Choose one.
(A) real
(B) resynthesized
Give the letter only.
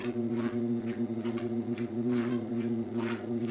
B